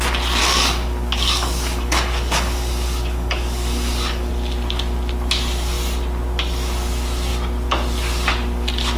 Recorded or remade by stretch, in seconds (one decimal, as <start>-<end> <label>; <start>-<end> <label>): 0.0-0.4 recorded; 0.4-4.3 remade; 4.3-9.0 recorded